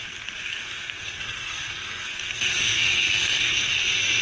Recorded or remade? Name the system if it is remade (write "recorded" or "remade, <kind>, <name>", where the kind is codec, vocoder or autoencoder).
remade, codec, SNAC